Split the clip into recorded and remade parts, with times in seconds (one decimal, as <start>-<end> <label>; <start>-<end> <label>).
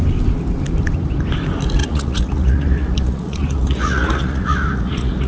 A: 0.0-1.8 recorded; 1.8-5.3 remade